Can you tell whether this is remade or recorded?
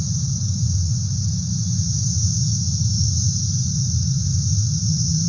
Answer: remade